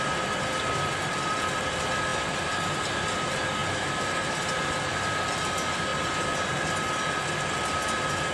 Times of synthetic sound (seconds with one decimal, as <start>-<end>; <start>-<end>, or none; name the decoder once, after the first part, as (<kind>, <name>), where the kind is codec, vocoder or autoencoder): none